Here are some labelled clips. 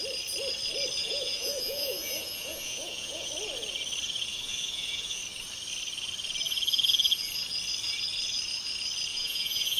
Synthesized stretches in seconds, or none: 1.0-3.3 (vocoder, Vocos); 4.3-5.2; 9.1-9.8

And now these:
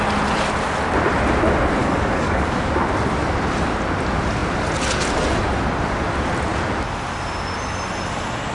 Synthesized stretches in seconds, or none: 1.8-2.7 (codec, DAC)

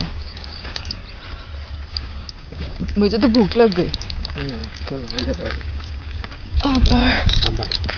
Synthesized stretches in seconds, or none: 0.0-1.0 (codec, DAC); 1.9-8.0

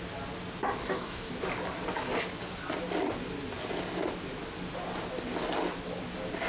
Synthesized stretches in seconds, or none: 0.8-1.3 (codec, DAC)

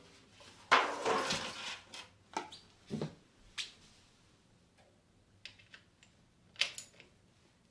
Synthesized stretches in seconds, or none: none

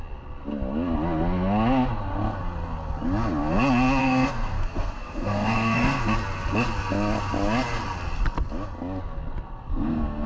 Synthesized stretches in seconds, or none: 4.0-6.0 (codec, SNAC); 9.7-10.3